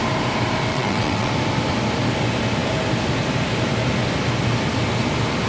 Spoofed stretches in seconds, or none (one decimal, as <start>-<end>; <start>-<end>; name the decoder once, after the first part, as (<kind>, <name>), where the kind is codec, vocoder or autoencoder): 0.7-1.3 (vocoder, WaveNeXt)